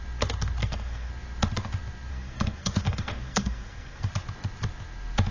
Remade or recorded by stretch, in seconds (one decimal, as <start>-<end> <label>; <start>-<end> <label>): 0.0-0.6 recorded; 0.6-1.1 remade; 1.1-2.1 recorded; 2.1-4.1 remade; 4.1-5.3 recorded

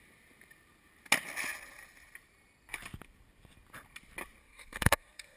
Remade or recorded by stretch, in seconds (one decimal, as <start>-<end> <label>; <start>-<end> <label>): 0.0-4.4 recorded; 4.4-5.4 remade

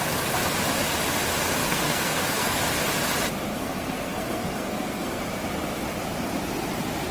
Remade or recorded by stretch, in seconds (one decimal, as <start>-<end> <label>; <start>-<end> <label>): 0.0-1.6 recorded; 1.6-2.6 remade; 2.6-3.5 recorded; 3.5-5.2 remade; 5.2-7.1 recorded

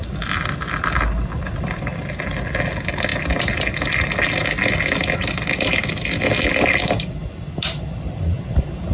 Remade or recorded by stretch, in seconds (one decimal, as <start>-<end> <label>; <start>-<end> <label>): 0.0-8.9 recorded

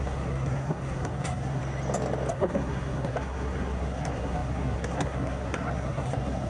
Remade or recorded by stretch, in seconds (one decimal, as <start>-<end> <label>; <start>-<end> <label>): 0.0-1.6 remade; 1.6-2.3 recorded; 2.3-6.5 remade